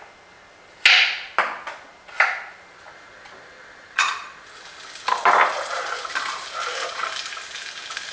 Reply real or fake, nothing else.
real